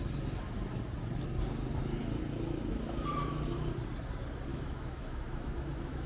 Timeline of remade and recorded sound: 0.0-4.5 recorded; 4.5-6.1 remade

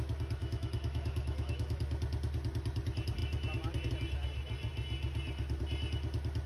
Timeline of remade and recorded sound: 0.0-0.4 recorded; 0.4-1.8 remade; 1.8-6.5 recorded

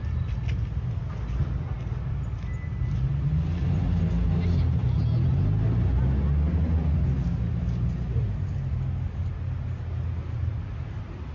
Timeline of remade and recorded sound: 0.0-11.3 recorded

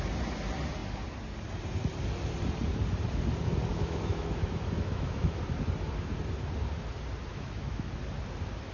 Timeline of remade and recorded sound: 0.0-3.7 recorded; 3.7-5.4 remade; 5.4-7.3 recorded; 7.3-7.9 remade; 7.9-8.7 recorded

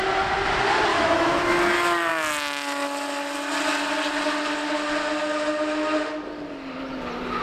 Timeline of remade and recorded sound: 0.0-0.9 recorded; 0.9-1.4 remade; 1.4-7.4 recorded

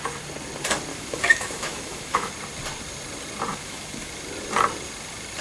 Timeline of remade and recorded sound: 0.0-0.9 recorded; 0.9-2.3 remade; 2.3-3.5 recorded; 3.5-4.1 remade; 4.1-5.4 recorded